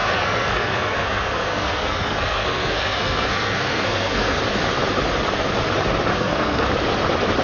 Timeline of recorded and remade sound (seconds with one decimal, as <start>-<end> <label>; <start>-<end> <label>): 0.0-4.4 remade; 4.4-6.1 recorded; 6.1-6.7 remade; 6.7-7.4 recorded